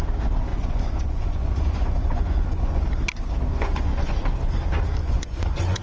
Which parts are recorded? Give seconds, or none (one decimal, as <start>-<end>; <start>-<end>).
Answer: 0.0-0.5; 2.8-3.5; 4.1-5.0